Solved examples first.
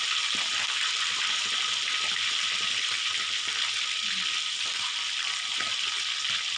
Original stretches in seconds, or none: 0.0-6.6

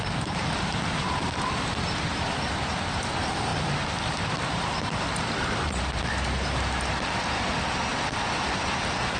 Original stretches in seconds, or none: 0.0-0.4; 1.7-3.5; 6.2-9.2